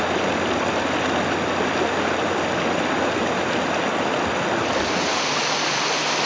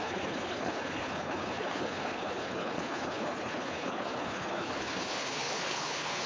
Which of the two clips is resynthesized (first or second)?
second